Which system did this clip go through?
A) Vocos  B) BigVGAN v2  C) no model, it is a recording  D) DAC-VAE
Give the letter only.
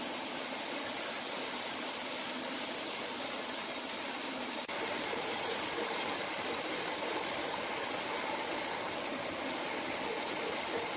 C